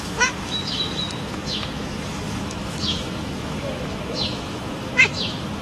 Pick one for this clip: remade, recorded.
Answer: remade